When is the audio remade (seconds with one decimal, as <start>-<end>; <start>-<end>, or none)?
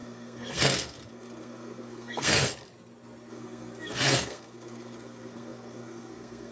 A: 0.0-2.5; 3.3-6.5